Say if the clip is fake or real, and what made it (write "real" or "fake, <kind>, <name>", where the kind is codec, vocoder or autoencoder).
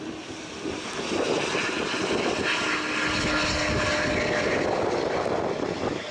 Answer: real